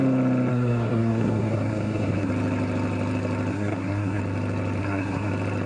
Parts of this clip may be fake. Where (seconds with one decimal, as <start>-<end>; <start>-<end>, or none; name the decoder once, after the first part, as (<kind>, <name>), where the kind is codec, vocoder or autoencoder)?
0.5-2.3 (codec, SNAC); 3.5-4.2; 4.8-5.3